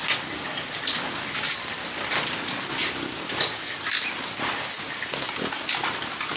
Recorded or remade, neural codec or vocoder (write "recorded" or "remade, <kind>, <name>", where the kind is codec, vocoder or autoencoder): recorded